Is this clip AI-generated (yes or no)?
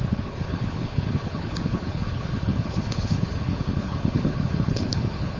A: yes